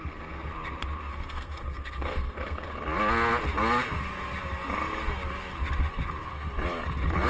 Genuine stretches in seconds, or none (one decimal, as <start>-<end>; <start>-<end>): 0.5-1.1; 2.7-7.3